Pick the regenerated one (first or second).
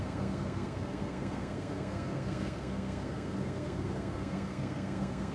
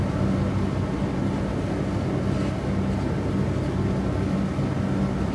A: first